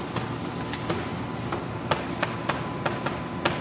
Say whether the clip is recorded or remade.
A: recorded